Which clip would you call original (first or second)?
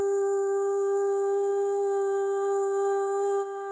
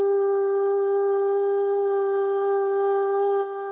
second